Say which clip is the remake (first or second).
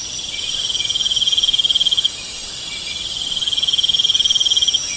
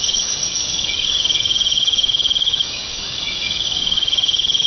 second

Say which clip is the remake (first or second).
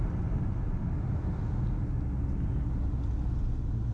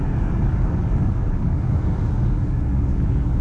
second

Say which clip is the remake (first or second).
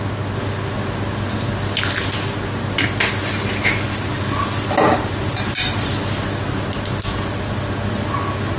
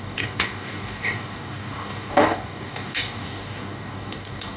second